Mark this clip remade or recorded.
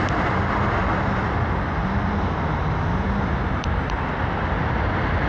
remade